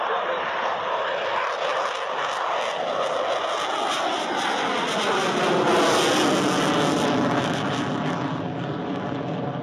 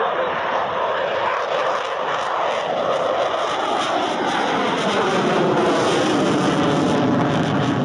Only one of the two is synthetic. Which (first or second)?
second